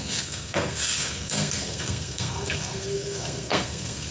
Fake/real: fake